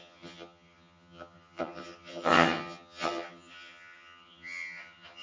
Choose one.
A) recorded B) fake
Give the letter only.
B